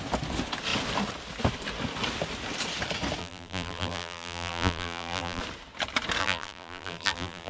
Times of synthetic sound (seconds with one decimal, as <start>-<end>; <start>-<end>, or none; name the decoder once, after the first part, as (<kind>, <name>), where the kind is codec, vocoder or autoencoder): 3.2-5.4 (vocoder, BigVGAN v2); 6.2-7.5

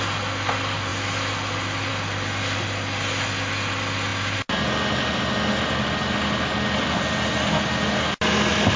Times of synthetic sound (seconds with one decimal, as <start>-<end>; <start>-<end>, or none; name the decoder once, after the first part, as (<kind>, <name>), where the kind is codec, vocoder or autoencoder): none

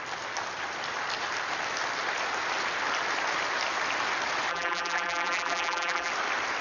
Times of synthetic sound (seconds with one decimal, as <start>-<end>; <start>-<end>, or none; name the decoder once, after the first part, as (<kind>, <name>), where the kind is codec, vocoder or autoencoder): 4.5-6.1 (vocoder, BigVGAN v2)

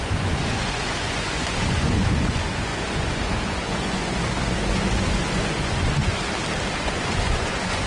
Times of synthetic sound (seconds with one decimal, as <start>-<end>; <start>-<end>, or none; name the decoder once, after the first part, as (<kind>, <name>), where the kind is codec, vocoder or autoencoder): 0.0-6.2 (vocoder, Vocos); 6.8-7.9

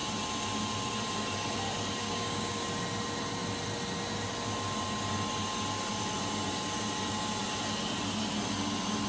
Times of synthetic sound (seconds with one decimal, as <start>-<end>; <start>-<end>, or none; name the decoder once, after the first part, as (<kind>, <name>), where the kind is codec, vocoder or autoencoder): 2.0-2.6 (codec, DAC)

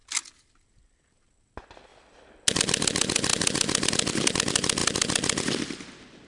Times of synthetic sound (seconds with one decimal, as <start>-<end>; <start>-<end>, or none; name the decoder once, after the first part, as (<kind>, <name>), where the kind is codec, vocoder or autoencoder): 3.3-3.9 (vocoder, BigVGAN v2)